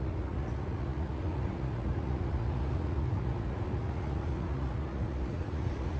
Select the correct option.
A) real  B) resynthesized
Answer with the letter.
B